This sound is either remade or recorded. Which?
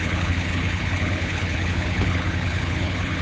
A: remade